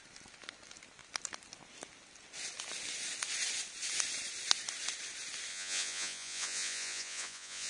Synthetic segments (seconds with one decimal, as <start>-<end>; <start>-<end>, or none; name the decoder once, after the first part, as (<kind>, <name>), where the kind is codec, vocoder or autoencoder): 5.5-7.7 (vocoder, Vocos)